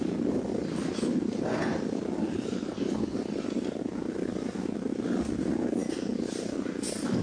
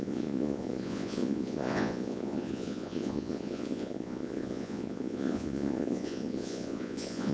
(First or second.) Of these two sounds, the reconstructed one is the second